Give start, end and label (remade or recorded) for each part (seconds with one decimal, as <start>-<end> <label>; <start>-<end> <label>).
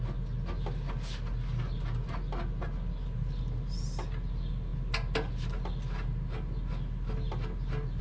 0.0-8.0 recorded